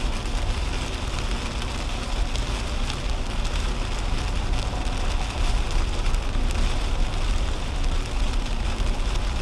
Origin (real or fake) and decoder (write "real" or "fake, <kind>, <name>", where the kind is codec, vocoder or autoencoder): real